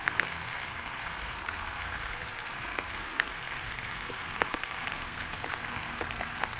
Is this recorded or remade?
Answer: remade